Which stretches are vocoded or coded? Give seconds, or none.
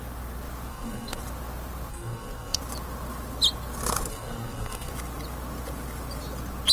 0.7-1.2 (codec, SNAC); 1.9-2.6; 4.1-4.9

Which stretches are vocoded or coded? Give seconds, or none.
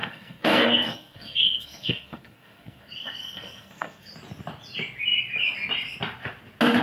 0.0-4.1 (codec, SNAC)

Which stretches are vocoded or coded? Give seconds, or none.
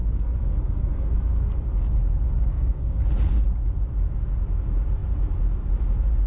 0.0-1.6 (codec, SNAC); 2.5-3.0